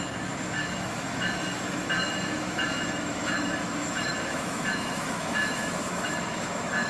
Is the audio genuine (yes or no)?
no